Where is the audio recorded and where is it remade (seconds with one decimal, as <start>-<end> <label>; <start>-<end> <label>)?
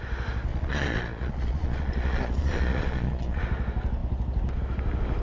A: 0.0-0.5 recorded; 0.5-3.4 remade; 3.4-5.2 recorded